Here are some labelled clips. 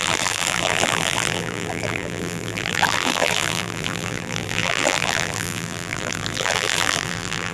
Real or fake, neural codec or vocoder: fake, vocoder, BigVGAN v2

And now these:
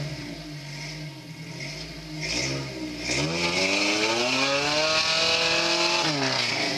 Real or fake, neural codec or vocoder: real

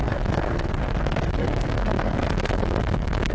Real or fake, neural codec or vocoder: fake, codec, SNAC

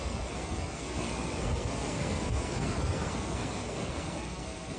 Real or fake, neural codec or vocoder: fake, codec, SNAC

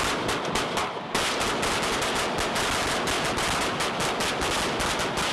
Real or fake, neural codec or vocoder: real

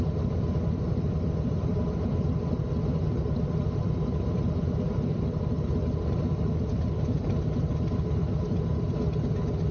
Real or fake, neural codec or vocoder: real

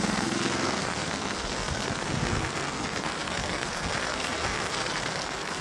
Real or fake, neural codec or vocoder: fake, codec, SNAC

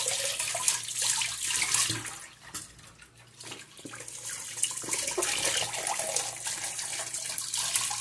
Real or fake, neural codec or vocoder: real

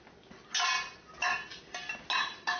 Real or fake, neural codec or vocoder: real